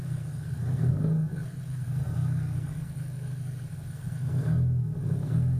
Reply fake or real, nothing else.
fake